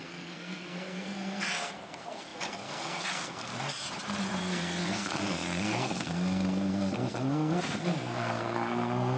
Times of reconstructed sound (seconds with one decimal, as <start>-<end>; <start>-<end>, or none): 0.0-3.5; 4.4-9.2